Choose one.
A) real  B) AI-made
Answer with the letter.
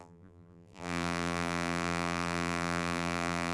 B